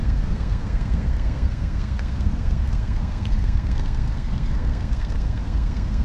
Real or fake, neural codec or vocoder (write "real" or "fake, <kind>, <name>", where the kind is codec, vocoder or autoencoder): fake, codec, SNAC